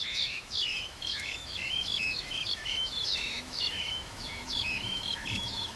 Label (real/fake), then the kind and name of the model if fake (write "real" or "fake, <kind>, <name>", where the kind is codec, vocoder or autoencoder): fake, autoencoder, DAC-VAE